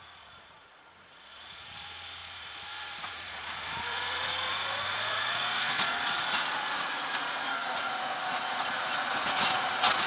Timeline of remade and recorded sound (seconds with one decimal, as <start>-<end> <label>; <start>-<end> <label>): 0.0-10.1 remade